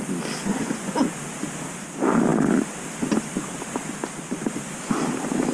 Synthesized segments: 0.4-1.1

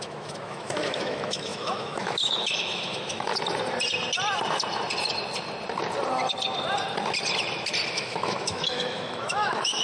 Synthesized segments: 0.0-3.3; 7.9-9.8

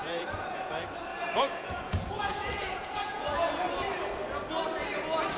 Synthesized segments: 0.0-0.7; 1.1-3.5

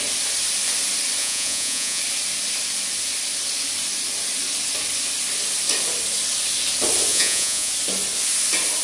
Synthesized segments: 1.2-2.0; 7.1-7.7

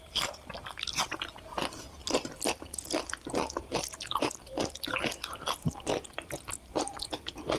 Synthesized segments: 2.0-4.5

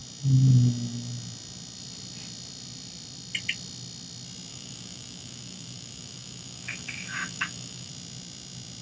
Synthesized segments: 4.5-7.9

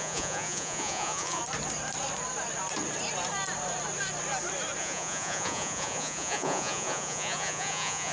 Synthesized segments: 0.0-1.4; 4.8-8.1